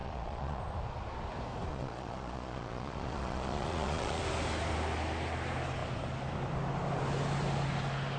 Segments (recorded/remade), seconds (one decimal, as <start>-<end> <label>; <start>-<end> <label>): 0.0-0.6 remade; 0.6-1.7 recorded; 1.7-4.2 remade; 4.2-8.2 recorded

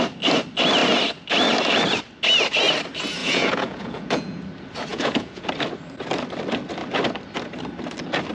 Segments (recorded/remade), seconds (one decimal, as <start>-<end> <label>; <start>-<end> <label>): 0.0-3.2 recorded; 3.2-4.4 remade; 4.4-4.9 recorded; 4.9-5.5 remade; 5.5-8.3 recorded

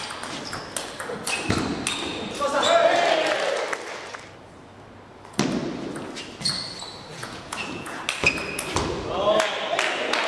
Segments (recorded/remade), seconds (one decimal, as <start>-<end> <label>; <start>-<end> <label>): 0.0-7.1 recorded; 7.1-8.0 remade; 8.0-10.3 recorded

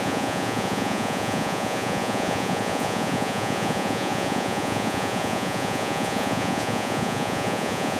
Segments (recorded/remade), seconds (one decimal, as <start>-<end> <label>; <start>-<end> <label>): 0.0-8.0 remade